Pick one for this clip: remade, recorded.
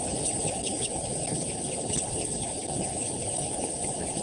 remade